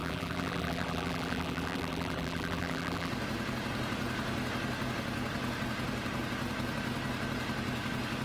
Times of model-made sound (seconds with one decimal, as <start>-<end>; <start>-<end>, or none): 0.0-3.1